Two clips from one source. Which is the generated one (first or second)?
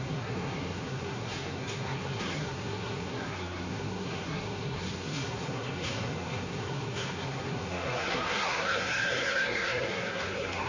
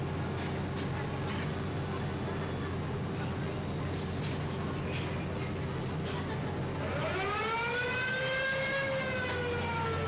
first